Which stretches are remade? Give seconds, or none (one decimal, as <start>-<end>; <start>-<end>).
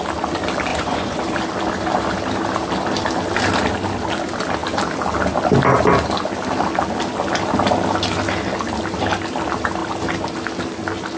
0.7-1.2